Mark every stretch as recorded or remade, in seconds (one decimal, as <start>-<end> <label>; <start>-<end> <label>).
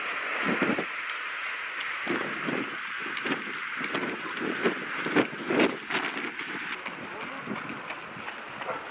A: 0.0-8.9 recorded